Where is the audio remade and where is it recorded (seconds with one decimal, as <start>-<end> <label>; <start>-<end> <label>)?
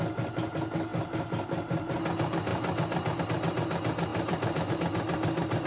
0.0-2.5 recorded; 2.5-3.2 remade; 3.2-4.1 recorded; 4.1-4.7 remade; 4.7-5.7 recorded